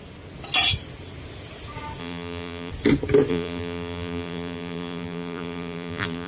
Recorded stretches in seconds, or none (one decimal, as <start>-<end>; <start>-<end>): 0.0-2.0; 2.7-3.3